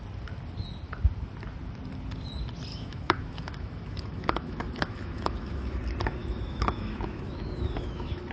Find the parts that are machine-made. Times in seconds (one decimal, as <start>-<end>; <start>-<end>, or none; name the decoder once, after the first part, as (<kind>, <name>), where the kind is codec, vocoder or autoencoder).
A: 2.7-5.8 (autoencoder, DAC-VAE); 6.2-8.3